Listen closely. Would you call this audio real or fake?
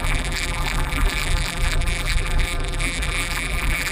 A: fake